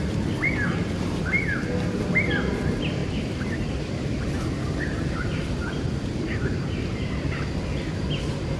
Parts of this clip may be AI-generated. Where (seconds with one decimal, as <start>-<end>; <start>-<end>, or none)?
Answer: 0.0-8.6